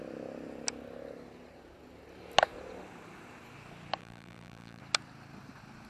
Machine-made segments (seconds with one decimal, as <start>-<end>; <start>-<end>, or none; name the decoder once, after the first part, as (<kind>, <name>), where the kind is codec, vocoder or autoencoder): 4.0-4.8 (vocoder, BigVGAN v2)